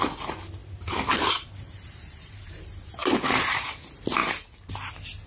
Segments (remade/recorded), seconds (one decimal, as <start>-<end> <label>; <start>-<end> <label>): 0.0-0.6 recorded; 0.6-2.5 remade; 2.5-3.0 recorded; 3.0-3.6 remade; 3.6-5.3 recorded